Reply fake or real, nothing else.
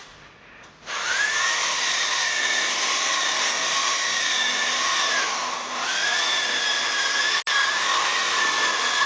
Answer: real